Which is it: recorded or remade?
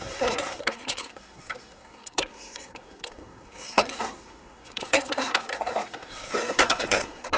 remade